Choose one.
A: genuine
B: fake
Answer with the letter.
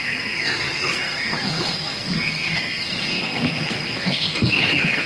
B